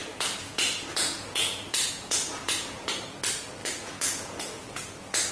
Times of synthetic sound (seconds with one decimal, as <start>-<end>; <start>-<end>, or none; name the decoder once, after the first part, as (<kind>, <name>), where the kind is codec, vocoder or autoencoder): 0.0-2.9 (vocoder, Vocos); 3.6-5.3